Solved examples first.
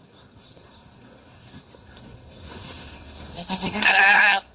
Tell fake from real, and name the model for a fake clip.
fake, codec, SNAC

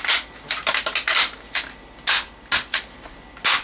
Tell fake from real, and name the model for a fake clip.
real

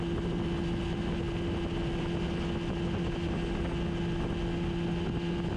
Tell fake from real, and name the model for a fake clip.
real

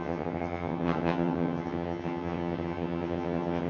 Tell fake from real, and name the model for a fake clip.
fake, vocoder, HiFi-GAN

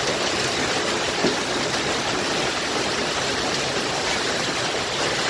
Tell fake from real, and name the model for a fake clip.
real